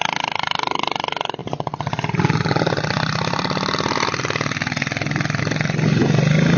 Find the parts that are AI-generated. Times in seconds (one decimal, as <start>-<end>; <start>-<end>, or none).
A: none

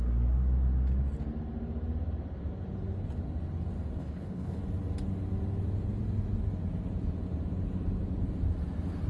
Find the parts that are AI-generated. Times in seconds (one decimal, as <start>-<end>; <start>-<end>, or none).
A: 4.0-4.6

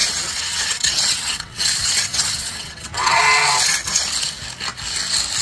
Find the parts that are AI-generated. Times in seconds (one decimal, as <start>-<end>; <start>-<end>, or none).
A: 0.0-3.2

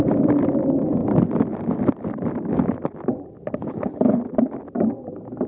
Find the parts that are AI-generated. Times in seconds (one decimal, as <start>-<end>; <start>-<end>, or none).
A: 3.6-4.2